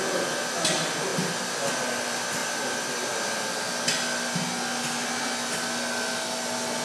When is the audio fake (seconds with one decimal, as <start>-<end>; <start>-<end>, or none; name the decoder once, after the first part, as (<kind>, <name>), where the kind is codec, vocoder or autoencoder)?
none